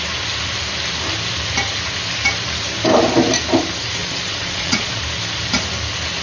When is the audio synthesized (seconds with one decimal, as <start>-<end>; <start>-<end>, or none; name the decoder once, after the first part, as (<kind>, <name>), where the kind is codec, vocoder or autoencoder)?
4.0-5.0 (vocoder, Vocos)